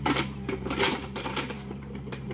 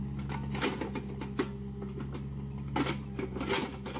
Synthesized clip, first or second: first